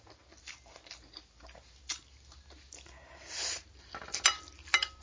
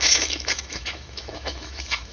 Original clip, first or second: first